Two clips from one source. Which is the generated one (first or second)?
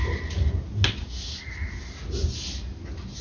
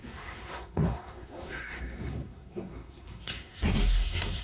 second